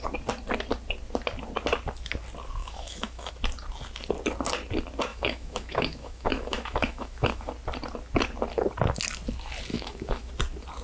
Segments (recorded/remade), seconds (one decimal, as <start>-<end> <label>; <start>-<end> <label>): 0.0-2.6 recorded; 2.6-3.3 remade; 3.3-5.1 recorded; 5.1-7.5 remade; 7.5-9.7 recorded; 9.7-10.3 remade; 10.3-10.8 recorded